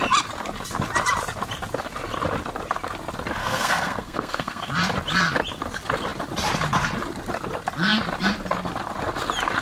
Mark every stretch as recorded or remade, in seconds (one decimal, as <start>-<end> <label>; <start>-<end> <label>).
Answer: 0.0-3.4 recorded; 3.4-4.7 remade; 4.7-9.6 recorded